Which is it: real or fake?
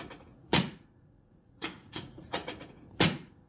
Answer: fake